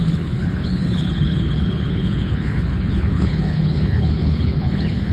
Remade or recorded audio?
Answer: remade